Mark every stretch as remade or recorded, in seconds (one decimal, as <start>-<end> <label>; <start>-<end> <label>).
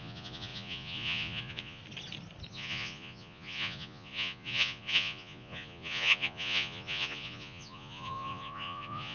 0.0-1.8 remade; 1.8-2.5 recorded; 2.5-9.1 remade